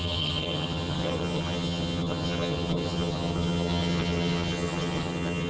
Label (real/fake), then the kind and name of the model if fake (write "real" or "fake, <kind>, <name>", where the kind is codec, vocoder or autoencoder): fake, vocoder, HiFi-GAN